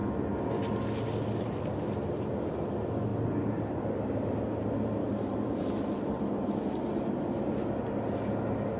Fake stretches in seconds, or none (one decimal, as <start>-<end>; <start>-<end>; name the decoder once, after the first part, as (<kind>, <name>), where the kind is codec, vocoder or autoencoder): 3.1-4.3 (vocoder, BigVGAN v2); 5.0-6.2